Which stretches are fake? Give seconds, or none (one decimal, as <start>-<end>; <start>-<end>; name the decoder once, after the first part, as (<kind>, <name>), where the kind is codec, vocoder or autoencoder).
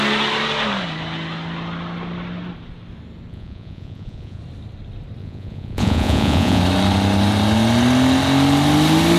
3.3-4.4 (vocoder, Vocos); 5.2-6.6